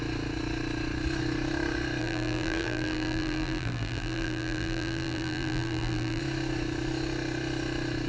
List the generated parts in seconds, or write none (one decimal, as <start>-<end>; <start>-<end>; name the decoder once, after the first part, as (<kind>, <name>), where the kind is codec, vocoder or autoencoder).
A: 2.0-6.2 (vocoder, BigVGAN v2)